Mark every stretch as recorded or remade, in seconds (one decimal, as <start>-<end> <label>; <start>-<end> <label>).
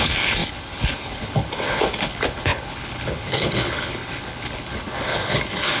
0.0-5.8 remade